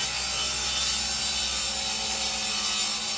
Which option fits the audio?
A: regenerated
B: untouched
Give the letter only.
B